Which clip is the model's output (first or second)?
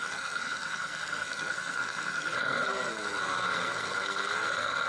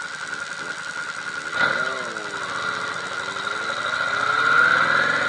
first